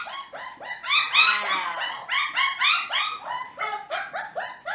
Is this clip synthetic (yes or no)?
no